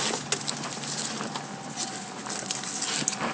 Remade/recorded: recorded